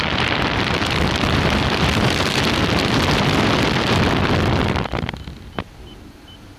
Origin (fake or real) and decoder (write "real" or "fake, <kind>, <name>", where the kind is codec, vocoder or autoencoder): fake, vocoder, BigVGAN v2